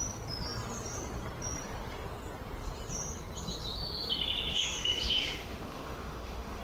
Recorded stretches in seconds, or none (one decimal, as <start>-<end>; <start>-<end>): 0.0-4.5